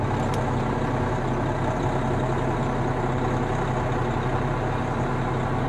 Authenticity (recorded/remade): recorded